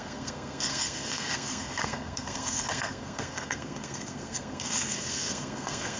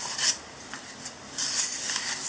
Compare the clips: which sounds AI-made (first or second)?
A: first